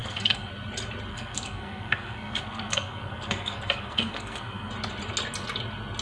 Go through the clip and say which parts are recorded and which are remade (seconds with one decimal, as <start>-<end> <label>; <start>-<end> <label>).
0.0-0.5 remade; 0.5-1.1 recorded; 1.1-4.7 remade; 4.7-6.0 recorded